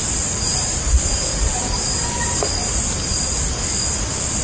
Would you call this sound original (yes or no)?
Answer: yes